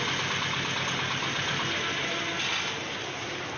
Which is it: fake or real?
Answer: real